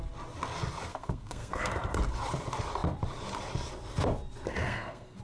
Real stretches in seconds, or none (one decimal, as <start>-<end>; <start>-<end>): 0.0-0.9; 1.7-4.5